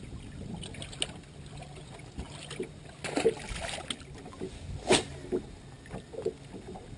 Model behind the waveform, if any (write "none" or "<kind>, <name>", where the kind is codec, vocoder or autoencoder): none